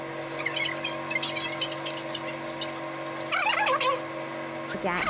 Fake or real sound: real